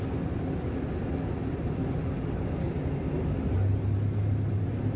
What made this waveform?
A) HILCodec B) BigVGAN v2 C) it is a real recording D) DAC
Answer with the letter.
C